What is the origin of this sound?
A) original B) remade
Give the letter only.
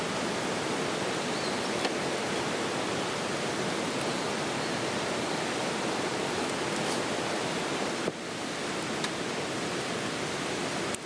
A